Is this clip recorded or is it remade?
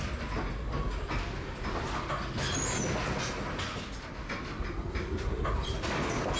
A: recorded